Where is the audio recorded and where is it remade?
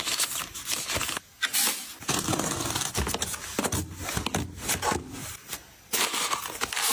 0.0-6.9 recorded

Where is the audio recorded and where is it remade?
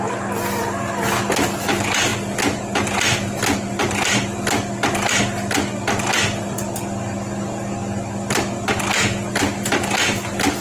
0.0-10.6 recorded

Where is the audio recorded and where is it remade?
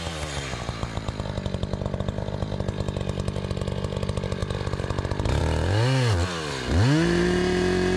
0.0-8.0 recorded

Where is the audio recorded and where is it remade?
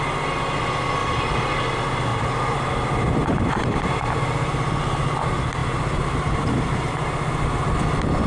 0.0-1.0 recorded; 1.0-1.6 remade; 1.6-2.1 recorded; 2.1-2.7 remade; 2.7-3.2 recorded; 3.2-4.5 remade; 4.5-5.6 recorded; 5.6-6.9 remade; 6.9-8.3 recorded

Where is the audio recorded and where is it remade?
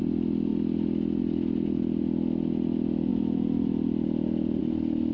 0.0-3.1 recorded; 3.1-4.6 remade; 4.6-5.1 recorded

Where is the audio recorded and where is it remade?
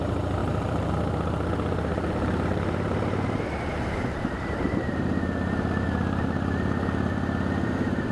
0.0-0.4 recorded; 0.4-0.9 remade; 0.9-1.9 recorded; 1.9-4.9 remade; 4.9-8.1 recorded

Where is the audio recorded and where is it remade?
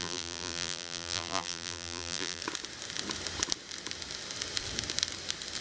0.0-2.4 remade; 2.4-5.6 recorded